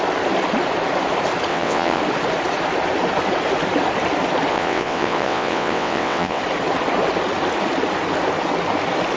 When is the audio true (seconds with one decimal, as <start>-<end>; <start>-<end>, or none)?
0.0-1.5; 2.0-4.5; 6.4-9.2